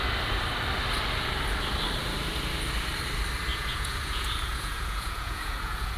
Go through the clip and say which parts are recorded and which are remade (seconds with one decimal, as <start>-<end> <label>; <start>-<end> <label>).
0.0-3.5 recorded; 3.5-6.0 remade